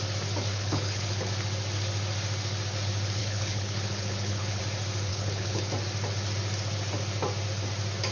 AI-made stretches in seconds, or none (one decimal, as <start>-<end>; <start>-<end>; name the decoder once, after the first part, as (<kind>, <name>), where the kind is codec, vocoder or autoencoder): 0.5-1.3 (codec, HILCodec); 3.2-4.6; 5.1-5.7

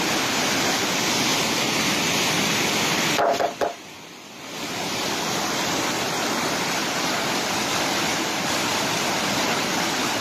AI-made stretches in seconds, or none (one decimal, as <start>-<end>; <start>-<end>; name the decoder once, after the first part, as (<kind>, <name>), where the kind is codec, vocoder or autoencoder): 0.0-10.2 (vocoder, BigVGAN v2)

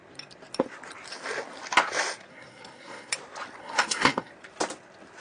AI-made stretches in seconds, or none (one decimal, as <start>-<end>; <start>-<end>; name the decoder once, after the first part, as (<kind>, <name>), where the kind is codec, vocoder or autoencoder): 2.3-3.1 (codec, SNAC); 3.6-4.3

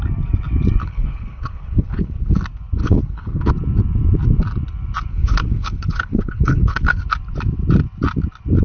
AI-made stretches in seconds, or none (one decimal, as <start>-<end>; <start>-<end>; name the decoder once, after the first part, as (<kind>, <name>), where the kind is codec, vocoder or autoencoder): 0.8-2.4 (codec, HILCodec); 2.8-3.5; 5.1-7.0

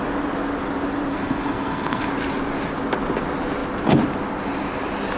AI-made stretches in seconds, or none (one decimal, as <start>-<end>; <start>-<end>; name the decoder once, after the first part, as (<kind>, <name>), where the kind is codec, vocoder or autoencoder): 1.1-2.1 (codec, SNAC)

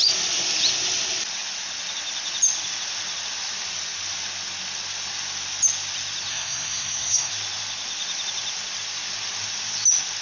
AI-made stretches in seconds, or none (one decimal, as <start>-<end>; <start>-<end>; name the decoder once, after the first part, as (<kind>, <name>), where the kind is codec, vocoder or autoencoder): 6.3-7.3 (codec, SNAC)

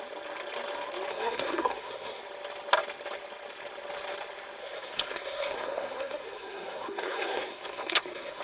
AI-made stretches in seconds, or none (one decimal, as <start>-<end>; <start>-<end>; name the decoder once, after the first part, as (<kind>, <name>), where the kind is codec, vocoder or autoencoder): 1.1-2.2 (codec, SNAC); 4.6-8.4

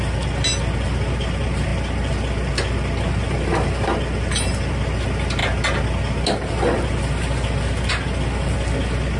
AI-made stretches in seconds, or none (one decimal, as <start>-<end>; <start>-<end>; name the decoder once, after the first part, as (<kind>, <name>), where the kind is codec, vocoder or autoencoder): none